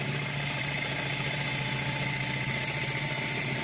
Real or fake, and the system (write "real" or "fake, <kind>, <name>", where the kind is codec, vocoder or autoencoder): real